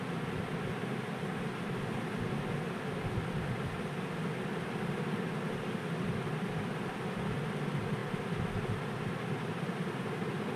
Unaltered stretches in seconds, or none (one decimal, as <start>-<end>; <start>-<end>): 0.0-10.6